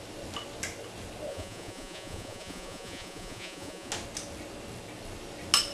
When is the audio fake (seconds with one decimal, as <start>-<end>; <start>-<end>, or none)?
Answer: 1.3-3.9